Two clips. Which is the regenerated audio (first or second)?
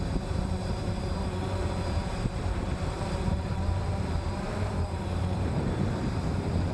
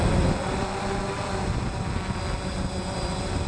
first